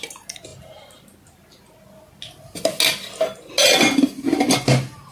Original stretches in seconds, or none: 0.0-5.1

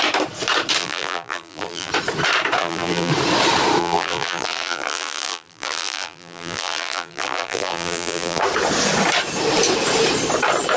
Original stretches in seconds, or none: 0.0-0.8; 1.9-2.6; 3.1-3.8; 8.4-10.8

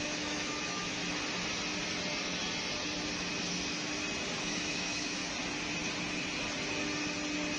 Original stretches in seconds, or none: 1.0-4.4; 5.2-7.6

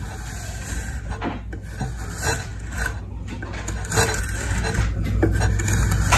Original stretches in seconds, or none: 0.0-6.2

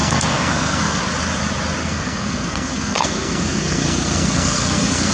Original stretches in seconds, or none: 1.0-1.8

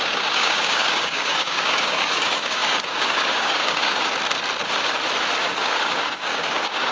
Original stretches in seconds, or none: 4.1-5.4

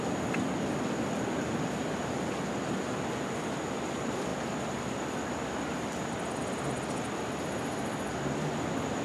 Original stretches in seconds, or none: 0.0-9.0

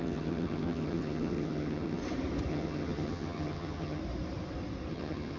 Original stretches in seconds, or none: 2.0-2.5; 4.0-4.9